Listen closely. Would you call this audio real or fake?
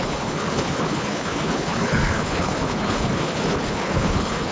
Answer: fake